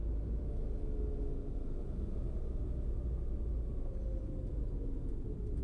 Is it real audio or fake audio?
real